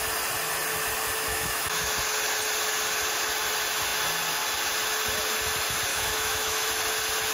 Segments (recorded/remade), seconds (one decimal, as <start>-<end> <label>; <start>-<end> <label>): 0.0-1.3 recorded; 1.3-1.9 remade; 1.9-5.9 recorded; 5.9-6.7 remade; 6.7-7.3 recorded